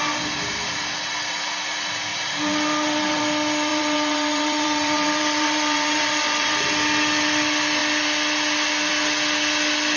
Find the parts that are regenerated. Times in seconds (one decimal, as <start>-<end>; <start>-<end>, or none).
2.1-3.2; 3.7-6.7